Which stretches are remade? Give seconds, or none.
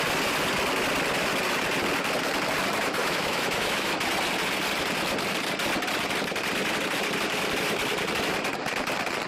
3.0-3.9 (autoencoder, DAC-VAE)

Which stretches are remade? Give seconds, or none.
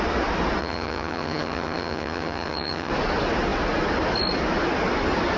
0.6-2.9 (vocoder, HiFi-GAN)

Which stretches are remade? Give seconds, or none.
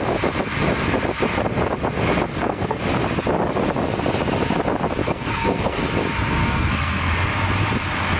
2.3-2.8 (codec, SNAC); 5.0-5.8; 6.4-7.1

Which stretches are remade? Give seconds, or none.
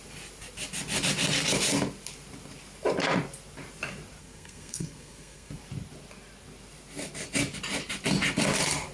4.2-5.5 (codec, SNAC)